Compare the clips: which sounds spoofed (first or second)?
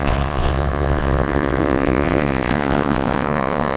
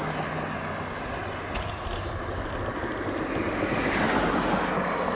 first